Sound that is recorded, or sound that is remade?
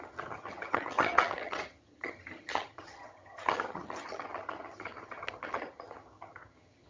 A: remade